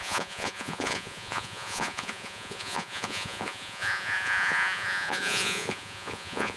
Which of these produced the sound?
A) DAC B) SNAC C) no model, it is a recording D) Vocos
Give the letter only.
D